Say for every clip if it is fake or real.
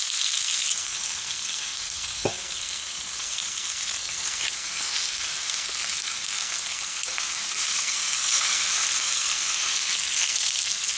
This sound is fake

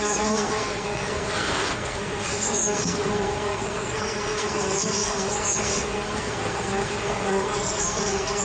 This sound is fake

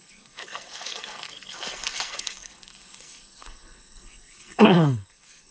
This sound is fake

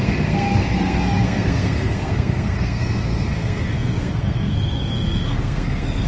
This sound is fake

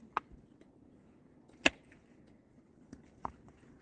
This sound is real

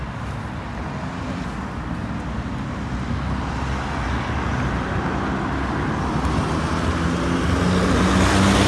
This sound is real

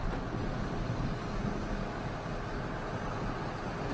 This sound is real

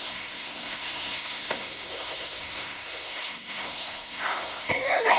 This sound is fake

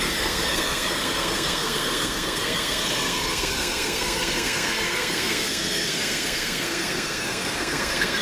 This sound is fake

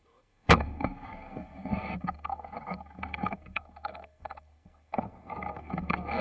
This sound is fake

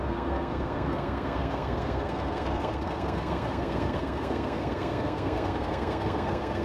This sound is fake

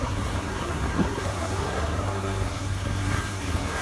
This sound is fake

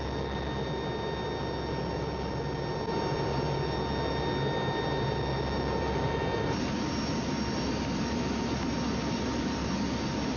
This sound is real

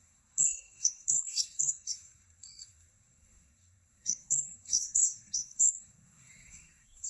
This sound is fake